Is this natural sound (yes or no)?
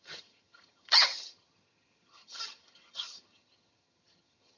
no